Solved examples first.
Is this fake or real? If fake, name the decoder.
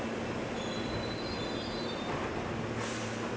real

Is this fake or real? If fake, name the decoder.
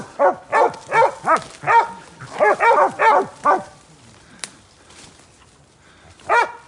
real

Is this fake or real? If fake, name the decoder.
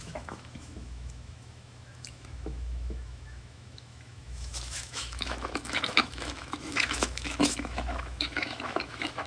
fake, autoencoder, DAC-VAE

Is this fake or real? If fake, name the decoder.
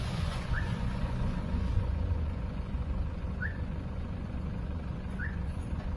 fake, vocoder, Vocos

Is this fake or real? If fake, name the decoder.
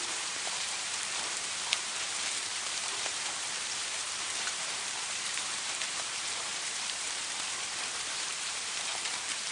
fake, vocoder, BigVGAN v2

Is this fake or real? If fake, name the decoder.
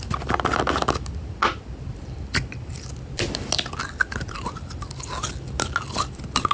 real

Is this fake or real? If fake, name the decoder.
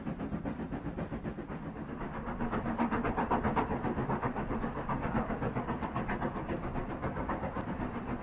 real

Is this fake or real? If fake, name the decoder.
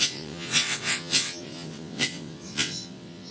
fake, vocoder, WaveNeXt